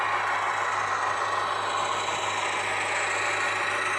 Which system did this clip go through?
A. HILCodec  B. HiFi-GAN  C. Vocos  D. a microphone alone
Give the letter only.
D